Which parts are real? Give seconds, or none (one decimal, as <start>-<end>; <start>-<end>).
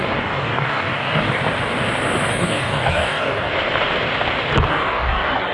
1.4-2.3; 3.5-4.7